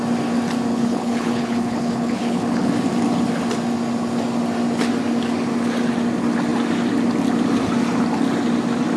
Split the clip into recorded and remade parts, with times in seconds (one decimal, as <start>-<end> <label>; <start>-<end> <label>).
0.0-0.7 recorded; 0.7-2.7 remade; 2.7-9.0 recorded